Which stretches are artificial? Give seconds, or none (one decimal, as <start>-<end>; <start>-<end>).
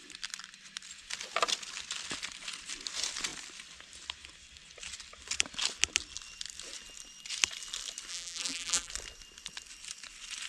8.1-8.9